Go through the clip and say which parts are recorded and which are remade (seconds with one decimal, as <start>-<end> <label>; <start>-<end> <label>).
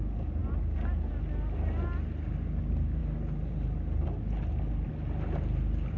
0.0-6.0 recorded